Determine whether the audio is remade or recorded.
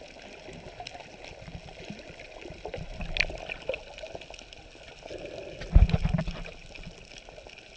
recorded